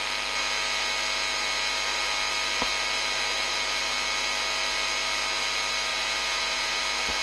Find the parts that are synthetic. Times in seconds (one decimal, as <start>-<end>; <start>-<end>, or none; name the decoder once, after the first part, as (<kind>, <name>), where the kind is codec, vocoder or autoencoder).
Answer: 5.9-6.8 (vocoder, Vocos)